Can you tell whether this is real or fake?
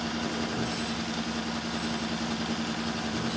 real